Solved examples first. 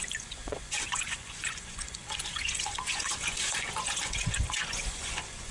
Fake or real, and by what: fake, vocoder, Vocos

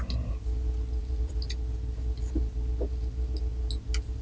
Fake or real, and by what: real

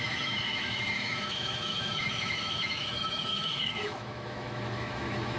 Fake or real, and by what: fake, autoencoder, DAC-VAE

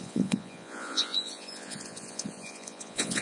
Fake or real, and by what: fake, vocoder, Vocos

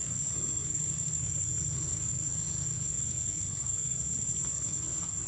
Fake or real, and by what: fake, codec, SNAC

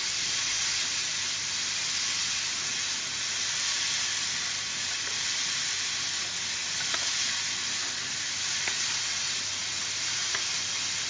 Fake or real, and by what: real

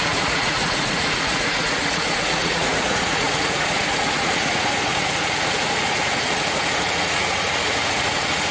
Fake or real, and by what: fake, vocoder, Vocos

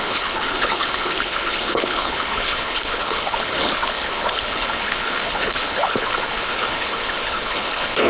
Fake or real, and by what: fake, codec, HILCodec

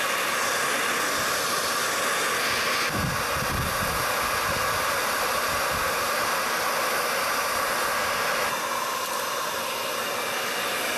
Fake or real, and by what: real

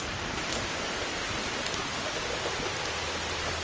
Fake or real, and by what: real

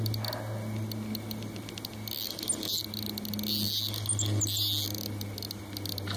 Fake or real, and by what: real